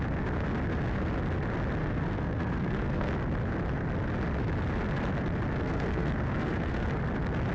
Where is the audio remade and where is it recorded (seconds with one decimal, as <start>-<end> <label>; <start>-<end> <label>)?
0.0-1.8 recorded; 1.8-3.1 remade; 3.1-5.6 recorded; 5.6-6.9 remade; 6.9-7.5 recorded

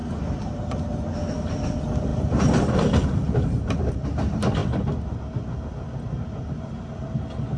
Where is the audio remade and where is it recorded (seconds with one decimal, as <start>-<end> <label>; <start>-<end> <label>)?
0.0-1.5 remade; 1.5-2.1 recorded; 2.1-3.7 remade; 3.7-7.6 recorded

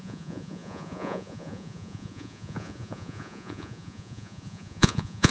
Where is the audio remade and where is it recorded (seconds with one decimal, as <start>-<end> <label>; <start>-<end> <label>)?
0.0-5.3 remade

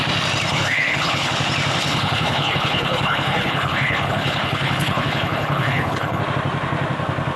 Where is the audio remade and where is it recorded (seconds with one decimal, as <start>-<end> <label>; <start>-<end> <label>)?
0.0-0.5 recorded; 0.5-1.3 remade; 1.3-1.8 recorded; 1.8-6.2 remade; 6.2-7.4 recorded